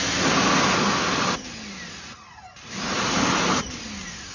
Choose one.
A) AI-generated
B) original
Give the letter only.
B